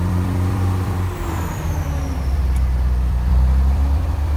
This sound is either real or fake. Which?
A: fake